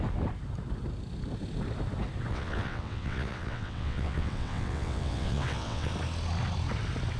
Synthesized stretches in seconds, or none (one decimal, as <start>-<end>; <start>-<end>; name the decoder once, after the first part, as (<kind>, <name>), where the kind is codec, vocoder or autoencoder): 2.3-5.9 (vocoder, WaveNeXt)